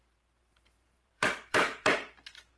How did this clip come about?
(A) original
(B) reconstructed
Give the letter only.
B